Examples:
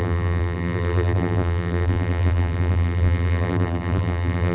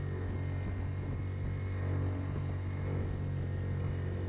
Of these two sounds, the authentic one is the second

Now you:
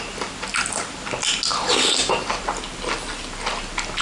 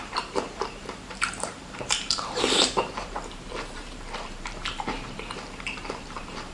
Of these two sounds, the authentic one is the first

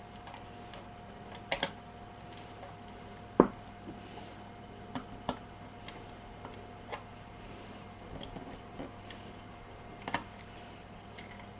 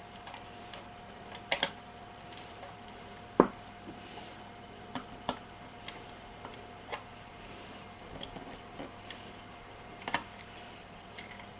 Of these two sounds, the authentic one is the first